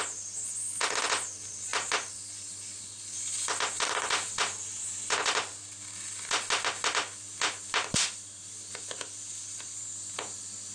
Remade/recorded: recorded